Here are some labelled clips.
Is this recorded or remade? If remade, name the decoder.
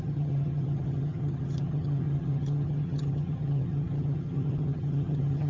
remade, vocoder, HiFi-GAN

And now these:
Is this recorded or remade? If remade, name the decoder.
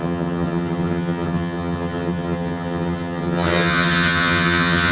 remade, vocoder, HiFi-GAN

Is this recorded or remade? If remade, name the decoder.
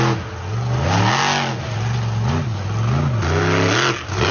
recorded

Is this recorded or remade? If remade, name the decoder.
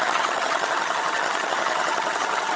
remade, vocoder, HiFi-GAN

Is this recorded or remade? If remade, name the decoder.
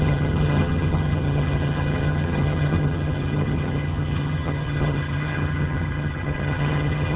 remade, vocoder, HiFi-GAN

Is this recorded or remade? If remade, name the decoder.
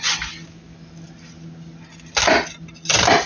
recorded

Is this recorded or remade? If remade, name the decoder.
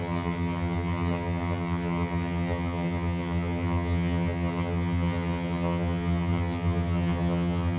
remade, vocoder, HiFi-GAN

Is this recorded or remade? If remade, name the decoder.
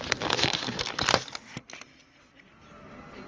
recorded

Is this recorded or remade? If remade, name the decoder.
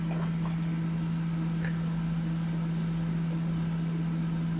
recorded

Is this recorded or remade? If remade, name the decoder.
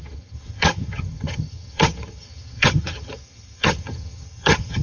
remade, vocoder, HiFi-GAN